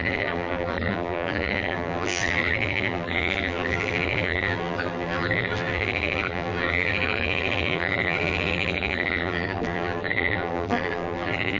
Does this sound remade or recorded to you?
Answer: remade